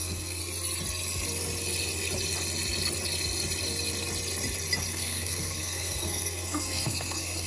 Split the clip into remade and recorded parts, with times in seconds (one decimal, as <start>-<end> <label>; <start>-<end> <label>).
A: 0.0-0.4 remade; 0.4-4.9 recorded; 4.9-7.5 remade